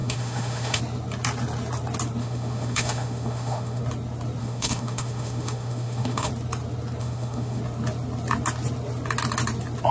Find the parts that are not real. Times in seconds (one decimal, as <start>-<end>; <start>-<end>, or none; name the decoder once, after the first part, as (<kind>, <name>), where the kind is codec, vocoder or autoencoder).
0.0-0.8 (autoencoder, DAC-VAE); 2.2-3.8; 4.4-6.3; 7.0-7.6